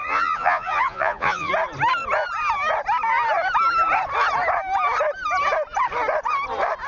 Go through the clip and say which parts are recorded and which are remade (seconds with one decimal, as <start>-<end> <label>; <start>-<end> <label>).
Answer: 0.0-1.5 remade; 1.5-6.9 recorded